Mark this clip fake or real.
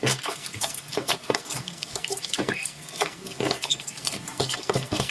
fake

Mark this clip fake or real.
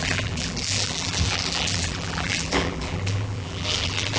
fake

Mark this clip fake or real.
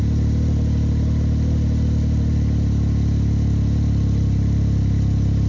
real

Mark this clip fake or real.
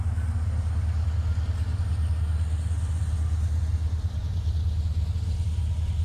real